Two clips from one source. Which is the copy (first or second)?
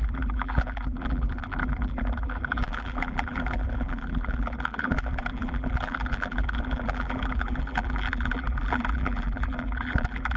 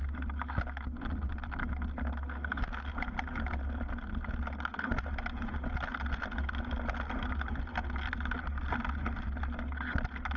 first